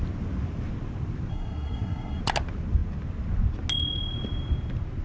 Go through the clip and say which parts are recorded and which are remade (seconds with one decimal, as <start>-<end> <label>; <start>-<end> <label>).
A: 0.0-1.3 recorded; 1.3-2.2 remade; 2.2-5.0 recorded

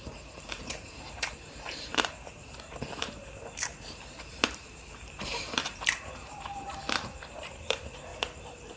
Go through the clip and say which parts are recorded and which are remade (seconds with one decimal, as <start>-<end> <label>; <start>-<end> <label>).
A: 0.0-3.7 remade; 3.7-4.2 recorded; 4.2-8.1 remade; 8.1-8.8 recorded

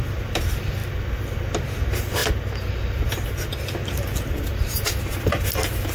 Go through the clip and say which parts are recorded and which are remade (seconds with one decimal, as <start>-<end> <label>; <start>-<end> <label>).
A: 0.0-5.9 recorded

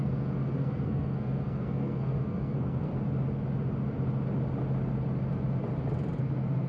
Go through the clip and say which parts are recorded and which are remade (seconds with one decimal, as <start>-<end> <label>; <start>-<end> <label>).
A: 0.0-2.9 remade; 2.9-6.2 recorded; 6.2-6.7 remade

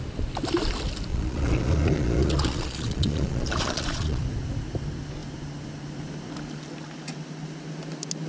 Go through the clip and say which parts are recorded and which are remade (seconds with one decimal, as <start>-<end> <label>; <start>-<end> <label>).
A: 0.0-1.1 recorded; 1.1-4.2 remade; 4.2-8.3 recorded

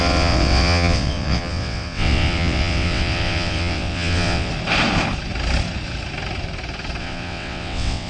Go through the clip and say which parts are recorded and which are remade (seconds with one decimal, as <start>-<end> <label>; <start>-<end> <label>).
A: 0.0-4.5 remade; 4.5-7.0 recorded; 7.0-8.1 remade